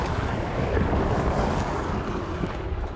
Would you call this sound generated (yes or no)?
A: yes